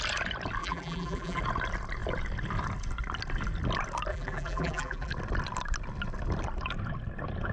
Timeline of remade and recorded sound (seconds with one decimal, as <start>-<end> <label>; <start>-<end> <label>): 0.0-0.6 recorded; 0.6-1.4 remade; 1.4-4.1 recorded; 4.1-5.1 remade; 5.1-7.5 recorded